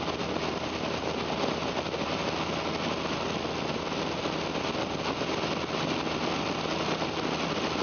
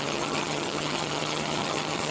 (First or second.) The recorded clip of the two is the first